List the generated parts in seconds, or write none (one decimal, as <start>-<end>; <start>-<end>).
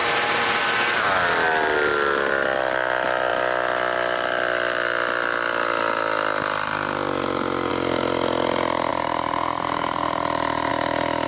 0.0-0.6; 8.9-10.7